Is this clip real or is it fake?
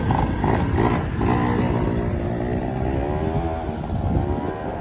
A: real